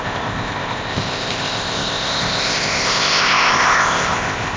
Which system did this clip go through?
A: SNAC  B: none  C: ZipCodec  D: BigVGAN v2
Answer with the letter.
C